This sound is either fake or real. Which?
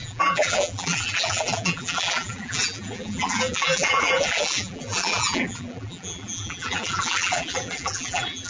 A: fake